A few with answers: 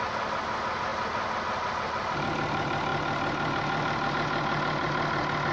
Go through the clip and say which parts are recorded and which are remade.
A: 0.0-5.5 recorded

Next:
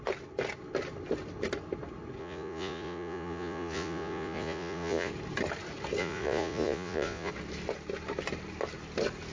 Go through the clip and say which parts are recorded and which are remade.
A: 0.0-2.2 recorded; 2.2-5.1 remade; 5.1-6.0 recorded; 6.0-7.3 remade; 7.3-9.3 recorded

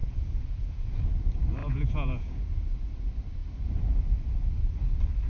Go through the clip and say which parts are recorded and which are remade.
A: 0.0-1.1 remade; 1.1-1.6 recorded; 1.6-2.6 remade; 2.6-5.3 recorded

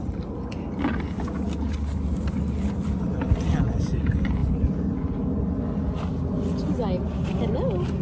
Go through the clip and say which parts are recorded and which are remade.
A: 0.0-8.0 recorded